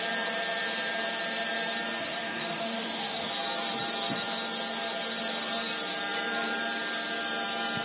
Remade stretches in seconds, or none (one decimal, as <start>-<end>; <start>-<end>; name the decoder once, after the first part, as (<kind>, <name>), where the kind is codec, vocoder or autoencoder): 2.0-3.3 (autoencoder, DAC-VAE)